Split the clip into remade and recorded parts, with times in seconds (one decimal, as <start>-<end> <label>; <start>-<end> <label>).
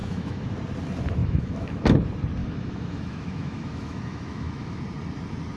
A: 0.0-0.5 remade; 0.5-1.2 recorded; 1.2-1.8 remade; 1.8-2.4 recorded; 2.4-4.8 remade; 4.8-5.6 recorded